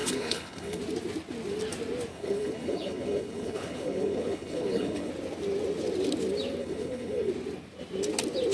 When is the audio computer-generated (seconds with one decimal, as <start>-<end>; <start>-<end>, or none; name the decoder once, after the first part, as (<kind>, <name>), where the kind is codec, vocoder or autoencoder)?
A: 0.0-0.8 (codec, HILCodec); 2.1-5.1; 6.6-7.3